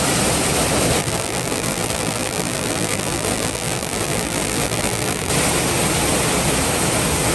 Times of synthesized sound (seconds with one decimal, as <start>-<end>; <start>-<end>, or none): 1.0-5.3